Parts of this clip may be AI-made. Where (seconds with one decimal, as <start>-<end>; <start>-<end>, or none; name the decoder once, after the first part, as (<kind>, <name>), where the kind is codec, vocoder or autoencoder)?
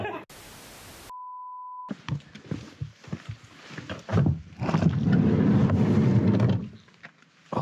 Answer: 4.1-4.6 (vocoder, BigVGAN v2)